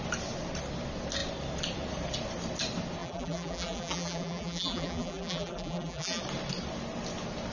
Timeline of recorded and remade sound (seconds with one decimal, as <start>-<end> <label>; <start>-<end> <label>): 0.0-3.0 recorded; 3.0-6.2 remade; 6.2-7.5 recorded